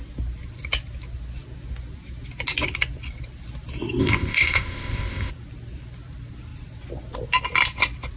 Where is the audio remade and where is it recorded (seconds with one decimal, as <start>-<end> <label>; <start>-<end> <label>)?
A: 0.0-4.0 recorded; 4.0-5.3 remade; 5.3-8.2 recorded

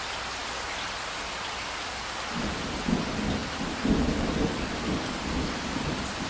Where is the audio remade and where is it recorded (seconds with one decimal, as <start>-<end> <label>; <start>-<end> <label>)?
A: 0.0-6.3 recorded